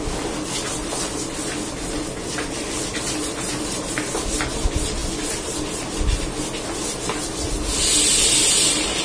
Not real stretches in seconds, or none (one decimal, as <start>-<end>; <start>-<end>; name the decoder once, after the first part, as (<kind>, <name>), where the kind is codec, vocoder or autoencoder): none